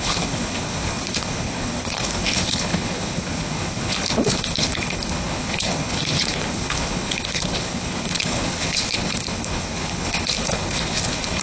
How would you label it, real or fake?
fake